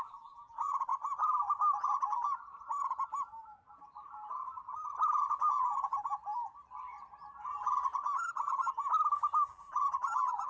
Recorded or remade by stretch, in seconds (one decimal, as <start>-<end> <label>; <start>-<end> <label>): 0.0-0.9 remade; 0.9-5.5 recorded; 5.5-5.9 remade; 5.9-8.0 recorded; 8.0-8.8 remade; 8.8-9.4 recorded; 9.4-10.5 remade

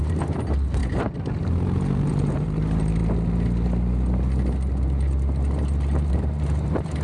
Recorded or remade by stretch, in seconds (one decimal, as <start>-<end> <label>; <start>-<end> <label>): 0.0-3.0 remade; 3.0-6.1 recorded; 6.1-7.0 remade

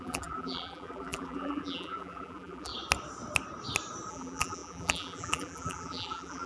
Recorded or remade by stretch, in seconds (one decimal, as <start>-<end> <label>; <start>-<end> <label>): 0.0-2.7 remade; 2.7-4.1 recorded; 4.1-6.5 remade

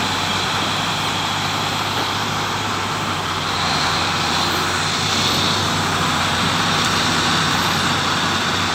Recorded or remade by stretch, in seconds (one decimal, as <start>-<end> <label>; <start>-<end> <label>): 0.0-7.6 remade; 7.6-8.7 recorded